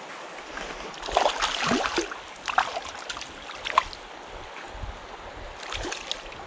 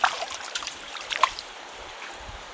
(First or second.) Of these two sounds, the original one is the first